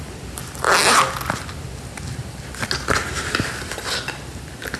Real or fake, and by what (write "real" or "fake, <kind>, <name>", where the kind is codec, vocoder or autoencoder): real